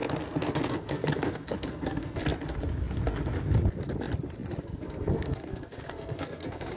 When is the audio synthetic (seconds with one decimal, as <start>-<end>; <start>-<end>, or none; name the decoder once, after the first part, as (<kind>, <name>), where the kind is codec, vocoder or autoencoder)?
0.7-2.2 (codec, SNAC); 4.6-6.8